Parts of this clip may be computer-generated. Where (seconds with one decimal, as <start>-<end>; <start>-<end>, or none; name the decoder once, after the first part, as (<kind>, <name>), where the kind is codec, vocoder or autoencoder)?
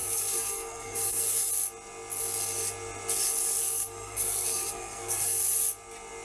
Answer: 0.0-1.5 (codec, SNAC); 3.6-5.4